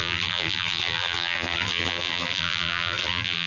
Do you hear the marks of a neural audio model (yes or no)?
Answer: yes